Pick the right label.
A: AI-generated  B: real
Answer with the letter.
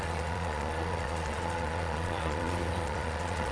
A